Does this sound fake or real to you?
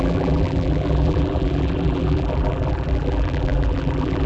fake